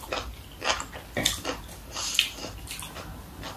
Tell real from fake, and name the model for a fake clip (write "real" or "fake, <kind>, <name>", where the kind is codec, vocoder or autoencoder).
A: real